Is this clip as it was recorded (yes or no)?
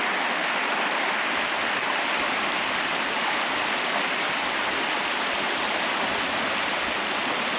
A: yes